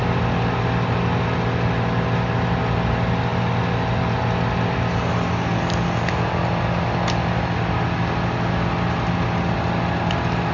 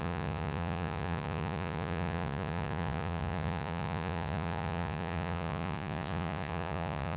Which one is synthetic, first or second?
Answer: second